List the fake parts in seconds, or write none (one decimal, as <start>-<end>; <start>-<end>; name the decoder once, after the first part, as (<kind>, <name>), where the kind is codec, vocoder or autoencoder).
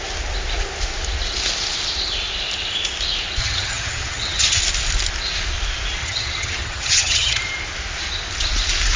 3.4-4.6 (vocoder, HiFi-GAN); 6.0-7.4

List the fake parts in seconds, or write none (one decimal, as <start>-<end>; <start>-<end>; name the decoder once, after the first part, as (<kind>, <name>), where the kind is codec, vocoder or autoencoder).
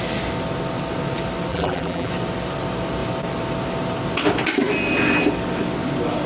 1.5-2.1 (vocoder, BigVGAN v2)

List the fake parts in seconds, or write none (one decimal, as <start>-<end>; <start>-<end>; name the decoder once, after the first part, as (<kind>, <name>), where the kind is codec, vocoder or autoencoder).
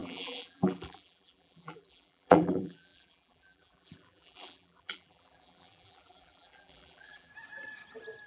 0.0-7.3 (vocoder, BigVGAN v2)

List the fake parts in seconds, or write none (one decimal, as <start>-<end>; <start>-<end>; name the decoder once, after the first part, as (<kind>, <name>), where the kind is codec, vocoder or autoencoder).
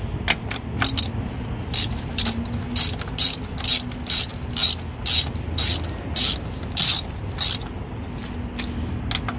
none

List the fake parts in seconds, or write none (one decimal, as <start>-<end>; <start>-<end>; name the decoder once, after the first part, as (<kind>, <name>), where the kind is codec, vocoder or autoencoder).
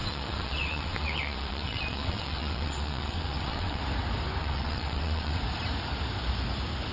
0.0-3.8 (vocoder, WaveNeXt); 4.4-5.4